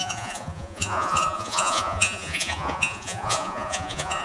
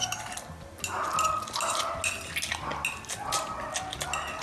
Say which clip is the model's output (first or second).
first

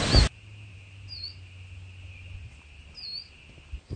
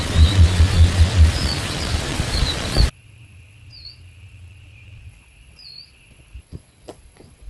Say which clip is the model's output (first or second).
second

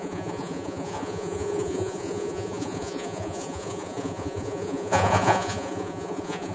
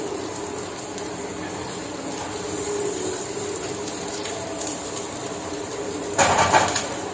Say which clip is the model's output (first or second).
first